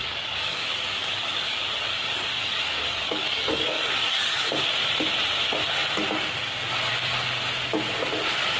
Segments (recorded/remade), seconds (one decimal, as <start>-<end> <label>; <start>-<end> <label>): 0.0-4.5 remade; 4.5-8.6 recorded